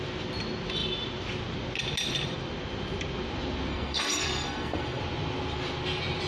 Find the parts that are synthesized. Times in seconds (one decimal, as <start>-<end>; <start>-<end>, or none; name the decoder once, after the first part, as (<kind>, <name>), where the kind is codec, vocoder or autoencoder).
3.7-5.0 (codec, SNAC)